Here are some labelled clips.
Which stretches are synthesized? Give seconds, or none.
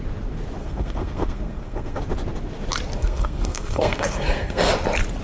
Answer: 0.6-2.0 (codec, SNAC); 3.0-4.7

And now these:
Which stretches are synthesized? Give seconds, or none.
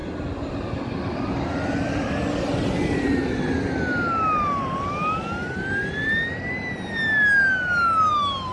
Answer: none